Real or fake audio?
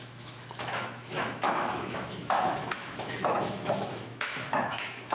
fake